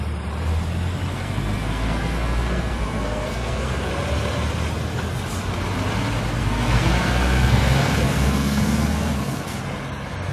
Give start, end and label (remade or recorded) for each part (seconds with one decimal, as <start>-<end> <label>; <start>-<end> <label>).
0.0-1.1 recorded; 1.1-3.9 remade; 3.9-6.4 recorded; 6.4-9.6 remade; 9.6-10.3 recorded